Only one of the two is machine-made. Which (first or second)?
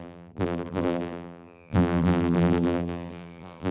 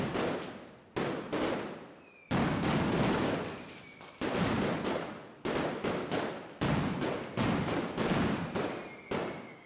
first